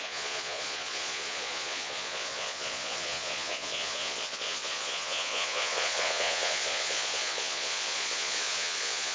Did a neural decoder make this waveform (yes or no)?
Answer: yes